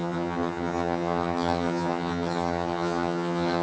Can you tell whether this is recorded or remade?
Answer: remade